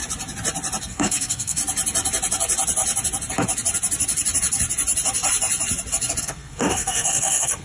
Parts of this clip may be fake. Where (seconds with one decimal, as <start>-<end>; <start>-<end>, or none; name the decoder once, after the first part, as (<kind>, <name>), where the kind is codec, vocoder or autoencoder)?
0.8-1.6 (codec, SNAC); 6.2-7.6